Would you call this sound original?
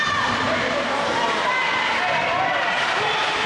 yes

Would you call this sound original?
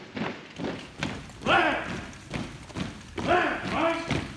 yes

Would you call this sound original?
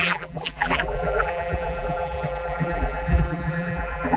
no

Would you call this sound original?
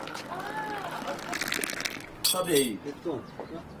yes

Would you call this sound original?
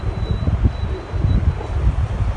yes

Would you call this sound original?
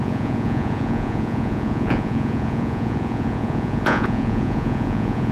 no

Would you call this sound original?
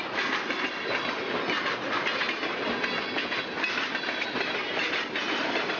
yes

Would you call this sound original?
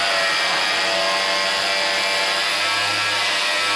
yes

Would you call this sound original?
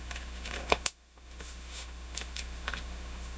no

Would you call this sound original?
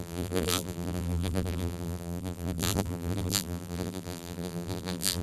no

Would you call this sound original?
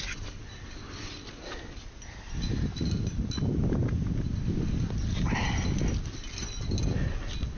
yes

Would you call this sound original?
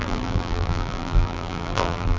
no